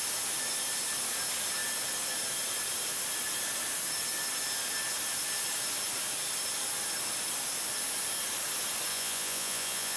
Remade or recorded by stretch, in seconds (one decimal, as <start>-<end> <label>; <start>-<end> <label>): 0.0-8.9 recorded; 8.9-10.0 remade